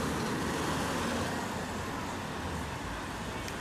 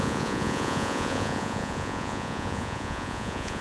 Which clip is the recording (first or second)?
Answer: first